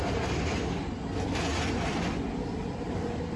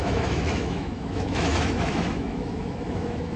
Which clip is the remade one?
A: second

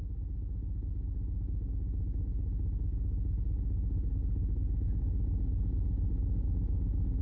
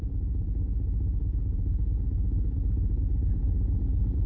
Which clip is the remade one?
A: second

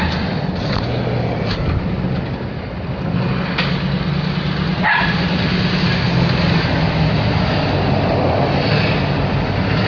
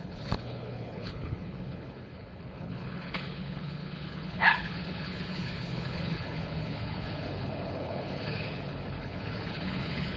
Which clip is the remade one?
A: second